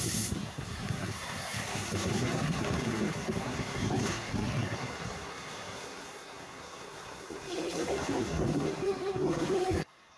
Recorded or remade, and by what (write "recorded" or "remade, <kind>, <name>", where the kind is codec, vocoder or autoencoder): remade, codec, SNAC